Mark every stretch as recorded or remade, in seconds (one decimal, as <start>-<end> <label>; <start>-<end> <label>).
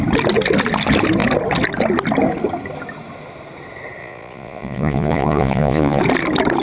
0.0-4.0 recorded; 4.0-6.0 remade; 6.0-6.6 recorded